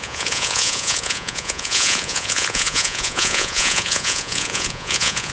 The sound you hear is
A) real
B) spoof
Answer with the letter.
B